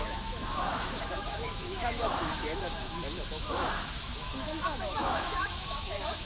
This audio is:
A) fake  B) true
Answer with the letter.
A